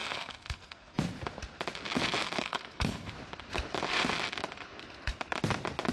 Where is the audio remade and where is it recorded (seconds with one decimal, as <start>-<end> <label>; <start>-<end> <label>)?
0.0-1.0 remade; 1.0-2.2 recorded; 2.2-3.1 remade; 3.1-5.9 recorded